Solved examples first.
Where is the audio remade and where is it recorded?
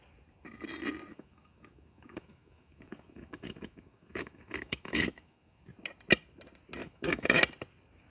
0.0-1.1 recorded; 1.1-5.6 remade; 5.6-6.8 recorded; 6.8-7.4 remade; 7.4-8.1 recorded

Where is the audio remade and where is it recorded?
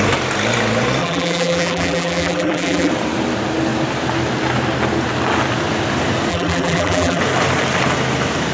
0.0-1.0 recorded; 1.0-2.9 remade; 2.9-6.3 recorded; 6.3-7.2 remade; 7.2-8.5 recorded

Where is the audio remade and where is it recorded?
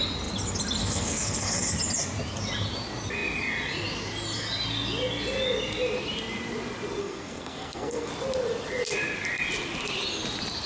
0.0-0.8 recorded; 0.8-1.7 remade; 1.7-7.0 recorded; 7.0-8.1 remade; 8.1-10.7 recorded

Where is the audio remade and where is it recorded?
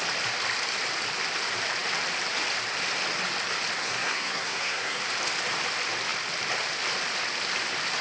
0.0-3.8 recorded; 3.8-5.0 remade; 5.0-8.0 recorded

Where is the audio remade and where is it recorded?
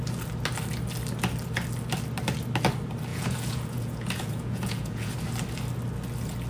0.0-3.1 recorded; 3.1-5.1 remade; 5.1-6.5 recorded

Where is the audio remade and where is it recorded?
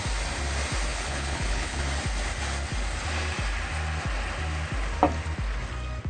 0.0-0.9 recorded; 0.9-1.8 remade; 1.8-6.1 recorded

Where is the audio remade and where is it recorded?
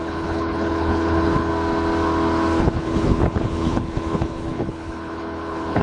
0.0-1.5 remade; 1.5-2.6 recorded; 2.6-5.8 remade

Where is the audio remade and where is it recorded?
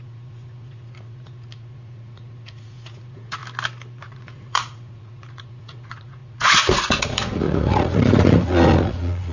0.0-3.4 remade; 3.4-4.0 recorded; 4.0-9.3 remade